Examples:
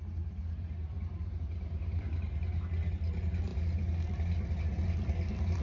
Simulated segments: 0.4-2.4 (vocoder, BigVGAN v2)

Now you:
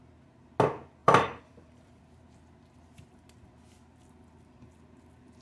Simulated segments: 1.0-2.0 (vocoder, BigVGAN v2)

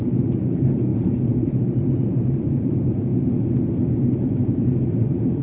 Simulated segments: 0.0-0.9 (vocoder, BigVGAN v2); 1.5-3.1; 3.9-5.4

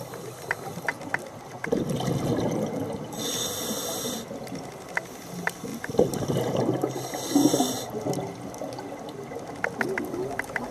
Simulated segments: none